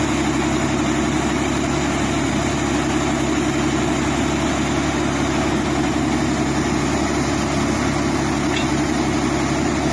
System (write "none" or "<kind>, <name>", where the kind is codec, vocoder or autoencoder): none